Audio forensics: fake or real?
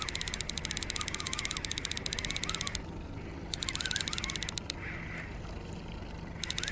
real